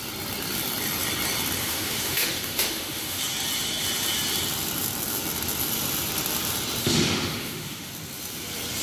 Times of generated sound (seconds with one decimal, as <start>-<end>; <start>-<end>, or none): 1.6-3.2; 6.8-7.9